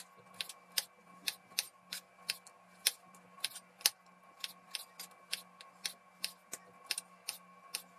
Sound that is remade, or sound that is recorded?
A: recorded